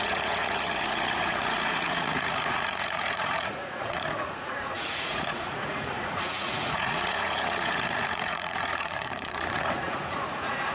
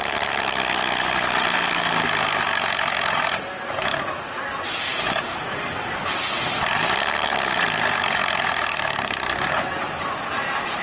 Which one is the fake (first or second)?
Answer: first